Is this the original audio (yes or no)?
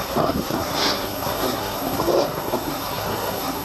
no